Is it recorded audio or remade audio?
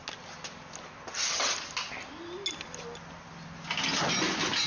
recorded